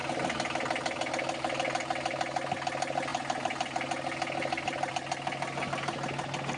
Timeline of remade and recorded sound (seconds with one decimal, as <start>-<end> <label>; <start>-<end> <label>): 0.0-6.6 recorded